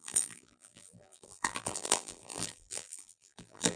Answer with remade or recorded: remade